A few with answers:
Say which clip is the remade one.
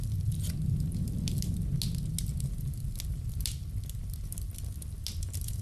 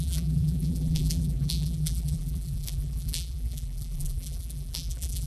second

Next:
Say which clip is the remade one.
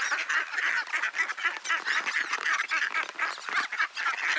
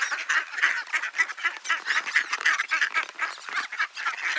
second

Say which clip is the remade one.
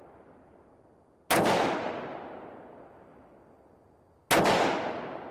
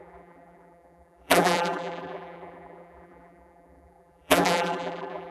second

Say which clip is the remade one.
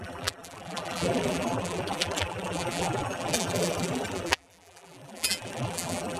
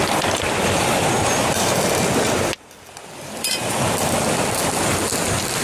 first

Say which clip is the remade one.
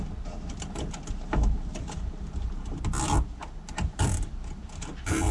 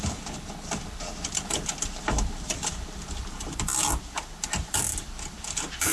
second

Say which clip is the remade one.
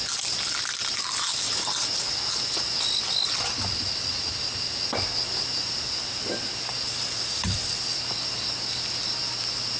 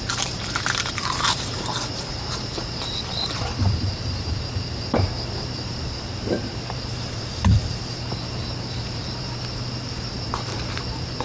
second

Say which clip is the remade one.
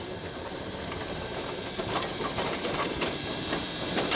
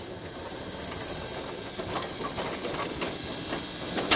first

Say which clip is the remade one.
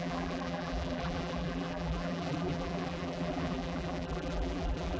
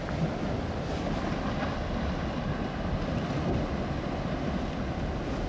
first